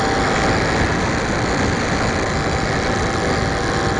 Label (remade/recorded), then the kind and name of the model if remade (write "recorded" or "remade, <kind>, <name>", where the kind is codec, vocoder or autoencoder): recorded